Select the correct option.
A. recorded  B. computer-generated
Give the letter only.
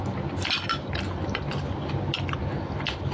A